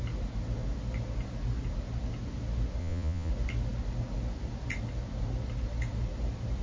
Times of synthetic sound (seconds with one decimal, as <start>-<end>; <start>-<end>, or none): 2.8-3.3